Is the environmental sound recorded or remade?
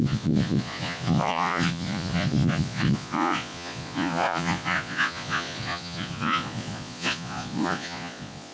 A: remade